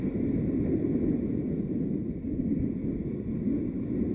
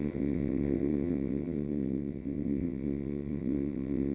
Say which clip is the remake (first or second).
second